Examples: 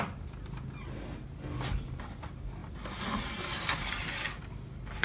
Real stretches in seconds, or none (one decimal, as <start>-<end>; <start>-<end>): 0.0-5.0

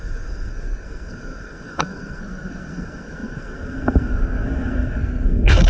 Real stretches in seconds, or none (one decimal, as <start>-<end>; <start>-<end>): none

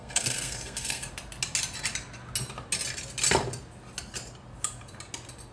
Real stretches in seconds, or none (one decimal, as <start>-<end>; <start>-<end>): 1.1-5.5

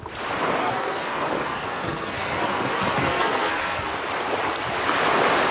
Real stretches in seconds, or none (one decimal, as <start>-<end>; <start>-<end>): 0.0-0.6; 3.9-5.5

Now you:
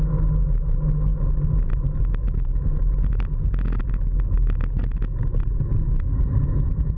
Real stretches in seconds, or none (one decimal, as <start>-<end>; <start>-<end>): 0.0-7.0

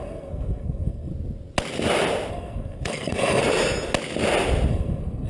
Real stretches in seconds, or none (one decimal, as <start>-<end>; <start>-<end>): 1.1-2.3; 3.4-4.7

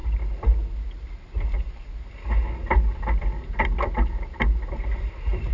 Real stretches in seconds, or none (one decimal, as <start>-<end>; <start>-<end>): 0.0-5.5

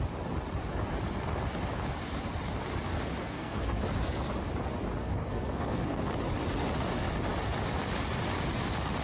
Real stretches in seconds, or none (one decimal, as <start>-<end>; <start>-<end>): 0.0-3.2; 3.8-5.0; 6.0-9.0